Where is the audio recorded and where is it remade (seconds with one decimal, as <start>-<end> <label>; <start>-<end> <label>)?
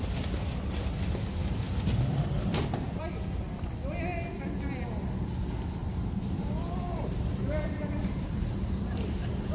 0.0-1.4 recorded; 1.4-1.9 remade; 1.9-2.5 recorded; 2.5-3.3 remade; 3.3-5.8 recorded; 5.8-9.5 remade